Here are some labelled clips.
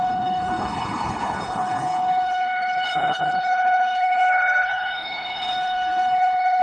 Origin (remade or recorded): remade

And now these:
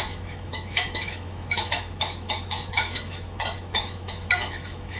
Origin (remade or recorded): remade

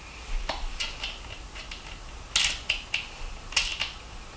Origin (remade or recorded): recorded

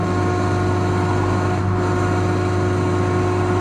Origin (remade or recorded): recorded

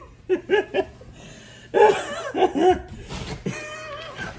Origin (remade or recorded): recorded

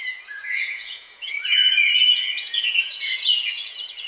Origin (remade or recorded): remade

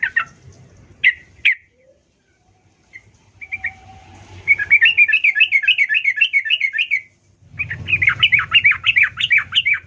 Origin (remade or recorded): recorded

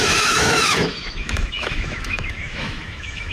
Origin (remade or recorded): remade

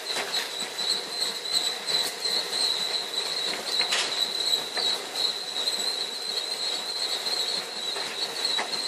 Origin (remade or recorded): recorded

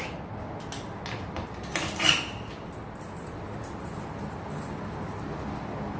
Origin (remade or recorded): recorded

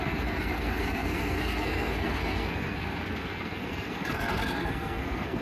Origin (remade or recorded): remade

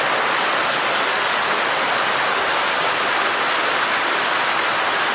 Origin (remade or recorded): recorded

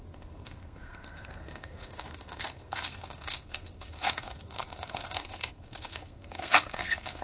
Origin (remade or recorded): remade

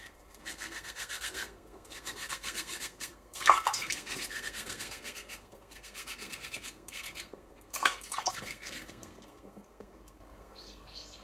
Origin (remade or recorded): remade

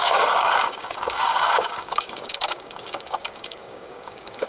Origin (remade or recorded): remade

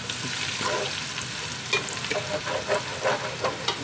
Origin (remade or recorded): recorded